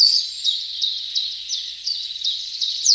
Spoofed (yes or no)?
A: yes